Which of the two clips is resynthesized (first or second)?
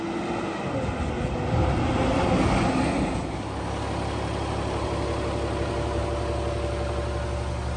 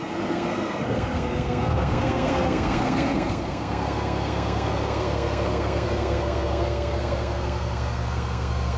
second